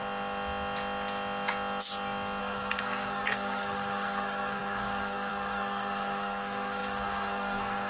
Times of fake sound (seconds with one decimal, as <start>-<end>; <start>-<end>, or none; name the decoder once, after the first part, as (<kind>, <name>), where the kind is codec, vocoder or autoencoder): 2.4-7.9 (codec, SNAC)